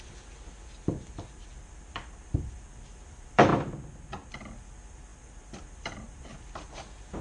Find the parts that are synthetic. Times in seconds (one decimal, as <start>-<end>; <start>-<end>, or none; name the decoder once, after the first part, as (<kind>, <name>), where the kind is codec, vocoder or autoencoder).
0.0-3.5 (vocoder, BigVGAN v2); 4.3-7.2